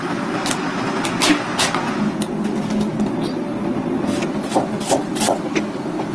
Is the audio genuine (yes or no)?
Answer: yes